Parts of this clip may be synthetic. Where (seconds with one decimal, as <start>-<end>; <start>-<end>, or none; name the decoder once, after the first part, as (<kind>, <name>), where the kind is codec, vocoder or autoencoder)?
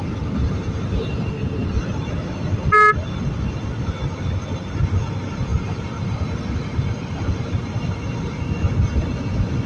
0.4-1.3 (vocoder, BigVGAN v2); 5.5-8.4